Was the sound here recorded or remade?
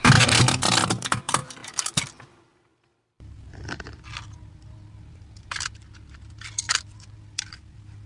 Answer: remade